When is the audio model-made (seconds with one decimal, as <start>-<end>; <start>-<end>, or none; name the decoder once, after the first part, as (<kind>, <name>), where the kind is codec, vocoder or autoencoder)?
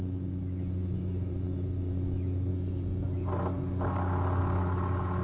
0.0-2.5 (autoencoder, DAC-VAE); 4.4-5.2